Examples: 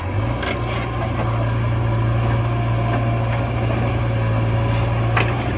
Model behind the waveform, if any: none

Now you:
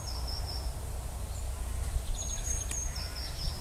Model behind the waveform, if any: vocoder, BigVGAN v2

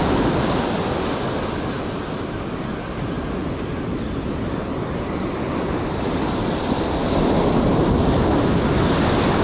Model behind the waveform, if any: none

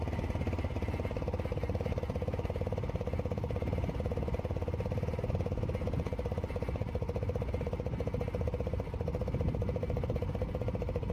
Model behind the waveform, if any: none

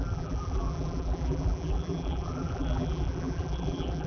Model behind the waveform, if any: vocoder, BigVGAN v2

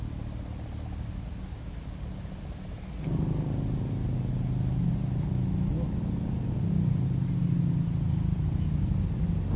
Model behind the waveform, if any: none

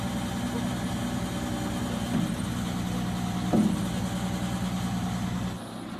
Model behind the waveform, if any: none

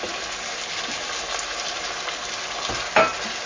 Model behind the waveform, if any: none